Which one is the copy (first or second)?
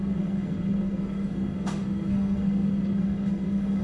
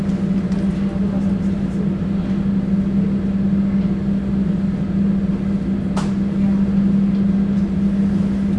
first